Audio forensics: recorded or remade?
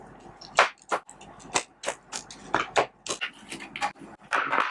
recorded